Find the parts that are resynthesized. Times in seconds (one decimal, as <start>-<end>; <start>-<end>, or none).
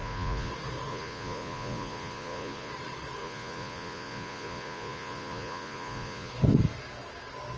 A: 0.0-0.5; 0.9-2.7; 3.2-6.3